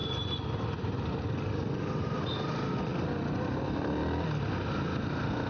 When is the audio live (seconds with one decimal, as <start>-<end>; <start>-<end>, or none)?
0.0-2.9; 3.6-5.5